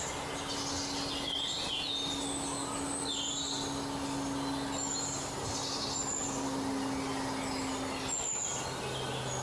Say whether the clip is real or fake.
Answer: real